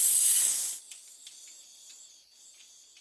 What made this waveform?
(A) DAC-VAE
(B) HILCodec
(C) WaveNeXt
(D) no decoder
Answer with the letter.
D